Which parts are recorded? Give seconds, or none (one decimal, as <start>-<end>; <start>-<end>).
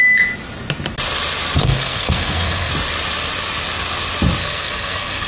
0.0-1.6; 2.7-4.4